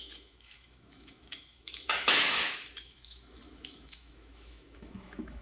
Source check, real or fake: fake